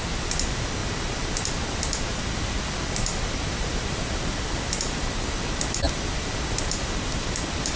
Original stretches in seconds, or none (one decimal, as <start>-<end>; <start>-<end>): 0.0-7.8